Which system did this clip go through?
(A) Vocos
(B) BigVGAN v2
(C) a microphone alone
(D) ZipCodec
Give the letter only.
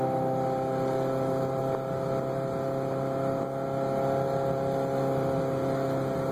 C